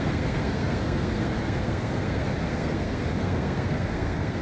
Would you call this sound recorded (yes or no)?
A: no